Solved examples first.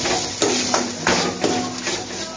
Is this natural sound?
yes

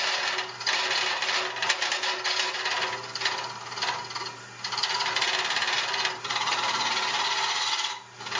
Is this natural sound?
yes